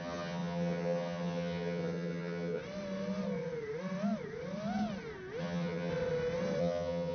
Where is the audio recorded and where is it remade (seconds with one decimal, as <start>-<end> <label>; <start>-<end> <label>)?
0.0-2.6 remade; 2.6-5.4 recorded; 5.4-5.9 remade; 5.9-6.6 recorded; 6.6-7.1 remade